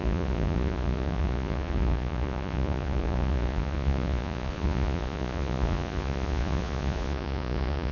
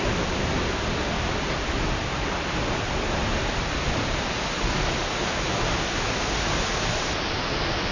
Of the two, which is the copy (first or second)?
first